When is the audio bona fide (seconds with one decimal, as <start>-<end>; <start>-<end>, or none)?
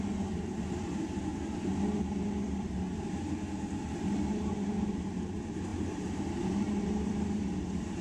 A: 1.3-4.0